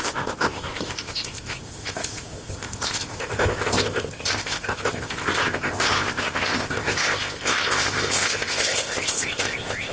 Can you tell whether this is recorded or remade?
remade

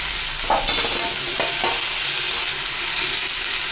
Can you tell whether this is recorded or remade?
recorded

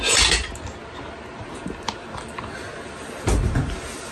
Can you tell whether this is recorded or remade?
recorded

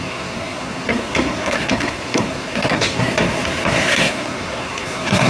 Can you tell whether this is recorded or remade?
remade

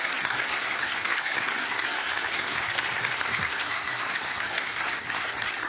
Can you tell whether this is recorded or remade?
remade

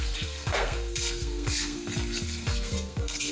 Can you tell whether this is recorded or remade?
remade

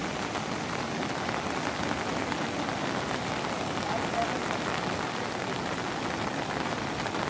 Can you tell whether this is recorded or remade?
recorded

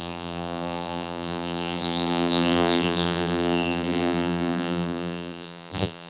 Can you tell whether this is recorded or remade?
remade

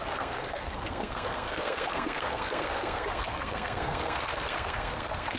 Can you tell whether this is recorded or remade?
remade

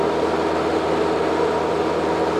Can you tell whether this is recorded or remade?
recorded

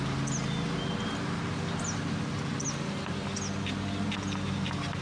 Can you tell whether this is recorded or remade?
recorded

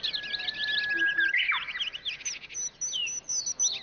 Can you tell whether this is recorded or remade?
recorded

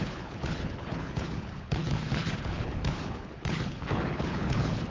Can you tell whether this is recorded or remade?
remade